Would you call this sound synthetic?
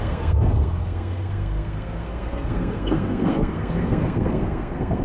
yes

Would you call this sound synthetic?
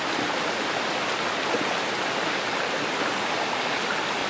no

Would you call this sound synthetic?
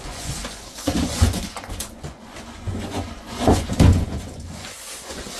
yes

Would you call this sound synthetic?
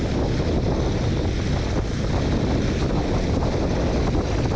no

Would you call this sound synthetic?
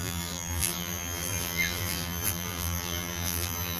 yes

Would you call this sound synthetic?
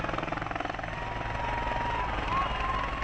no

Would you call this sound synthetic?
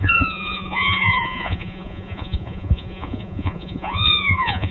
yes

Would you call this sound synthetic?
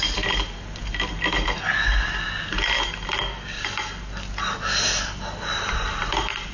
no